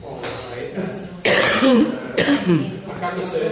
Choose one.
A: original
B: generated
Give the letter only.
B